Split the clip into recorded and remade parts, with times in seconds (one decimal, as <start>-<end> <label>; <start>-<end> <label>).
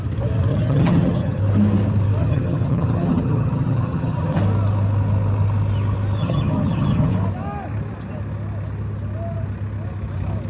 0.0-0.5 recorded; 0.5-1.4 remade; 1.4-2.2 recorded; 2.2-4.4 remade; 4.4-6.2 recorded; 6.2-7.1 remade; 7.1-10.5 recorded